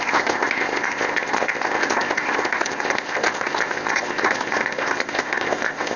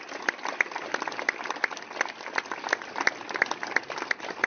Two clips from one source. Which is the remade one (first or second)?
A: first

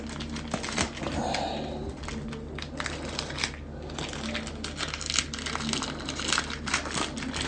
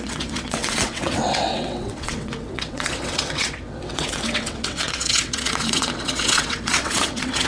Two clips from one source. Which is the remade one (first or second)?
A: second